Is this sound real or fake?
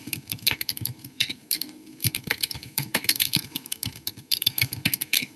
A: fake